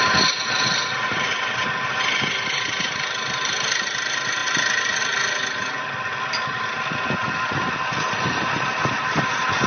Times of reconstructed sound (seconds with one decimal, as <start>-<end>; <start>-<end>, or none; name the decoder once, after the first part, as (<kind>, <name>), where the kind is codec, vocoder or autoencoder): 4.4-5.0 (vocoder, BigVGAN v2)